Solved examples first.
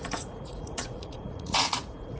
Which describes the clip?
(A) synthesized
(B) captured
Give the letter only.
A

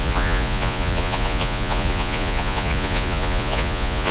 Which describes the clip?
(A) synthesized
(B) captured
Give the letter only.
A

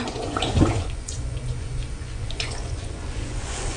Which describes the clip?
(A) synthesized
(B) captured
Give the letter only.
A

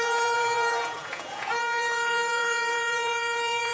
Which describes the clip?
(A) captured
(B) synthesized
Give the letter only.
B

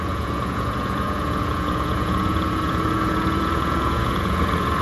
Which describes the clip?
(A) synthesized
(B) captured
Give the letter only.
A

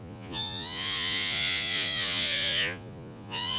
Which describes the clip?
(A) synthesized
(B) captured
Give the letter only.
A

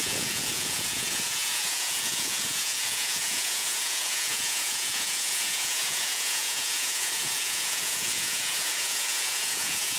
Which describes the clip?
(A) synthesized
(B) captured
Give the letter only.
A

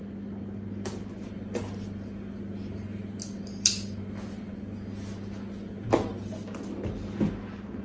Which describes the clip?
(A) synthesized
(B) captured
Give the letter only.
B